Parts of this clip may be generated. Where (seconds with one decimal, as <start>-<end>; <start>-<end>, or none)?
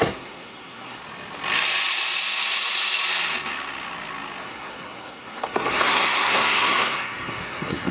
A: 0.0-1.0; 4.4-7.9